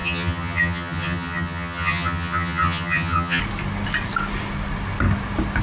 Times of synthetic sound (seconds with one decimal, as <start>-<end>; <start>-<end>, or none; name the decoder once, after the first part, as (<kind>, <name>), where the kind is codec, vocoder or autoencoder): 0.0-3.4 (vocoder, HiFi-GAN)